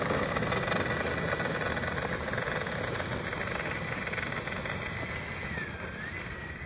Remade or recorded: recorded